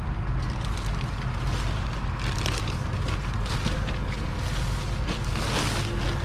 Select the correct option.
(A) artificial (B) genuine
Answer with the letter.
B